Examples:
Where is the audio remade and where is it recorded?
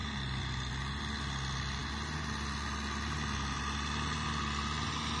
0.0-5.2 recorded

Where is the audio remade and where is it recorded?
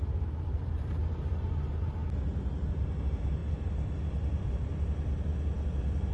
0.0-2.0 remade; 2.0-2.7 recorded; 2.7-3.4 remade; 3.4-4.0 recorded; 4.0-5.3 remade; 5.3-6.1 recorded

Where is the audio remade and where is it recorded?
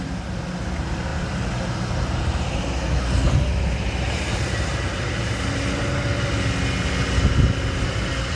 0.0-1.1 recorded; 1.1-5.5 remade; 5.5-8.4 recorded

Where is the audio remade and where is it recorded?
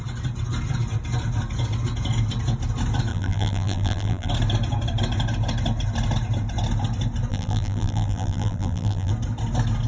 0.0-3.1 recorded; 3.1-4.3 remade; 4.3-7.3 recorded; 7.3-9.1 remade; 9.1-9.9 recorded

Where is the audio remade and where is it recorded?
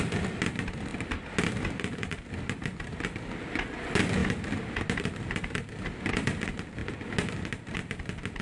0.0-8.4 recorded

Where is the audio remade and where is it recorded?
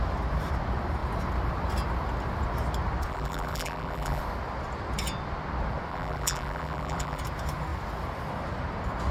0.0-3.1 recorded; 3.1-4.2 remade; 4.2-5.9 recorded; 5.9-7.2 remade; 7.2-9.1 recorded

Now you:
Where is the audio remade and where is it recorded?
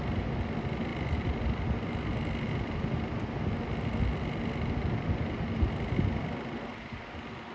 0.0-6.7 recorded; 6.7-7.5 remade